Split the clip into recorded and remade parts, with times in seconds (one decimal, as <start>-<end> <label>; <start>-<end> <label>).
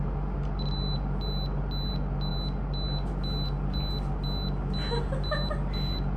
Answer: 0.0-6.2 recorded